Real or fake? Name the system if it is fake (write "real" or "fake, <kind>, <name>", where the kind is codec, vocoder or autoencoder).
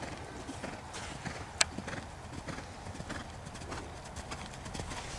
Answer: real